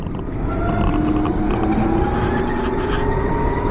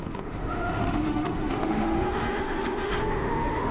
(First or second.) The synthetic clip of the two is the second